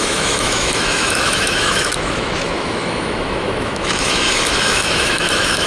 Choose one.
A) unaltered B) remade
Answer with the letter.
B